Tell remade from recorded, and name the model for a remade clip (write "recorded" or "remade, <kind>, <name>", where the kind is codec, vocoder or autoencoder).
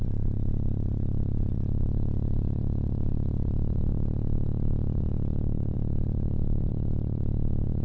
remade, vocoder, WaveNeXt